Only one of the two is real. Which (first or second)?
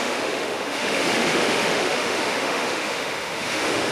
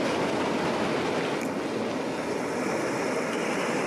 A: second